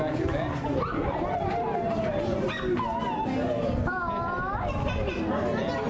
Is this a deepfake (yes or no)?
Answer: no